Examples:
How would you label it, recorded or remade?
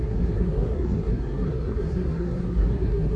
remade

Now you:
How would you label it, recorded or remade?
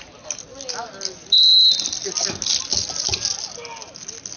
recorded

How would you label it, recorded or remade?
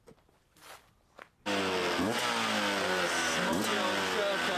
recorded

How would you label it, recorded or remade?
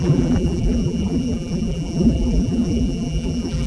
remade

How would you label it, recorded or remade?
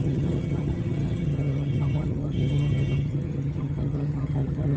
remade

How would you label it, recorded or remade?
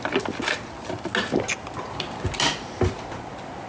recorded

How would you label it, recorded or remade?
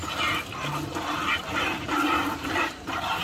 recorded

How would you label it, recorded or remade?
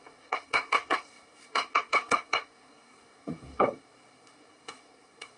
remade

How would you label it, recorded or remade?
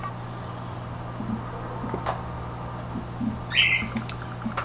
recorded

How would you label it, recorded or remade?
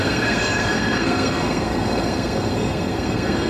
remade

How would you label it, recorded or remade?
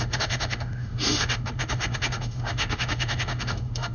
remade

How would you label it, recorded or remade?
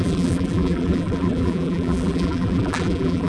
remade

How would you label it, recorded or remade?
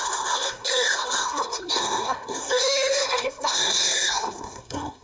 remade